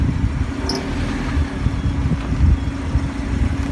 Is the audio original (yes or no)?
yes